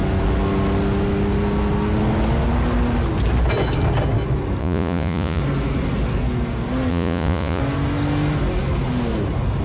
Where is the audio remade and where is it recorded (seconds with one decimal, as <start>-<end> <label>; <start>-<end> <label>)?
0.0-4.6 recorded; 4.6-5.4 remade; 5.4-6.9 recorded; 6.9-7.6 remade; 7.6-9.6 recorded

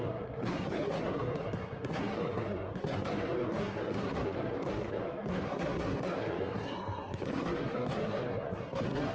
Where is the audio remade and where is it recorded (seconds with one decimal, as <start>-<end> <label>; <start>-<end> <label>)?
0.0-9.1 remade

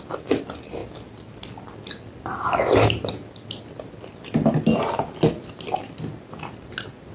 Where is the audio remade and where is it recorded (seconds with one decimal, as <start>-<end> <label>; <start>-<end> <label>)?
0.0-7.1 recorded